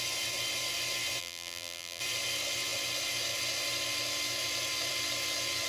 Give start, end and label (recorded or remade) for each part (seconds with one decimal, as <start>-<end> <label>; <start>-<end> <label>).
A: 0.0-1.2 recorded; 1.2-2.0 remade; 2.0-5.7 recorded